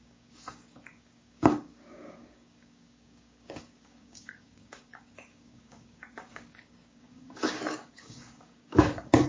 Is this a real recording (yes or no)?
no